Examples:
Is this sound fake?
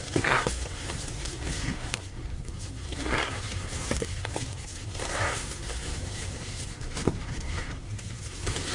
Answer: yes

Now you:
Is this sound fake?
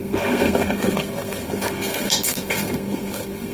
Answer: yes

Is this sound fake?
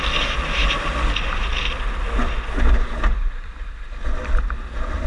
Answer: no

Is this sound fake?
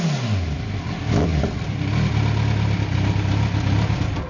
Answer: no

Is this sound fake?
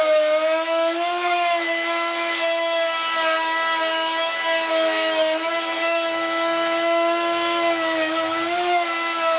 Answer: yes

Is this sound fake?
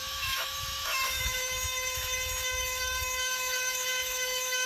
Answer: yes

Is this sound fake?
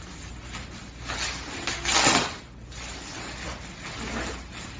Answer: no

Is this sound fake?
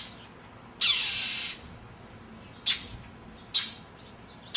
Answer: no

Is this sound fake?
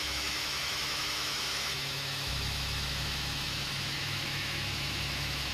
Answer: yes